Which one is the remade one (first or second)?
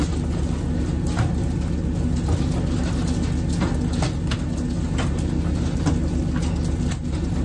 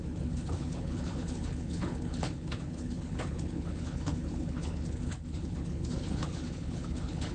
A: second